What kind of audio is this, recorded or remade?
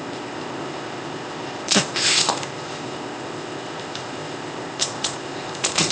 remade